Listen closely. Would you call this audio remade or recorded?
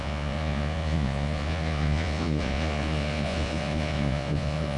remade